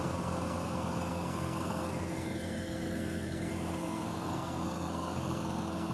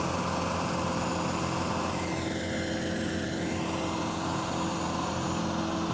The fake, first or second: first